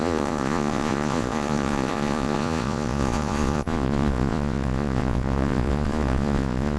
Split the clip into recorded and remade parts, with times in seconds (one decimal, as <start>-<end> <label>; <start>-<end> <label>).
0.0-6.8 remade